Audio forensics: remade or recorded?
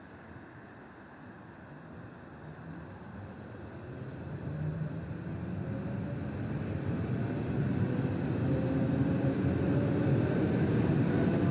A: recorded